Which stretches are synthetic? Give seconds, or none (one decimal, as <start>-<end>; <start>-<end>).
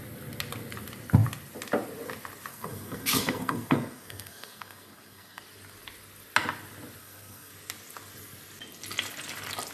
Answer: 2.5-5.4; 7.0-7.5